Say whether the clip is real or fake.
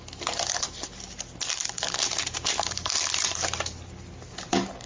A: real